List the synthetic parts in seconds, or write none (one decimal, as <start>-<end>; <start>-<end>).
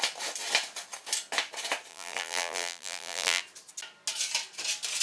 1.9-3.4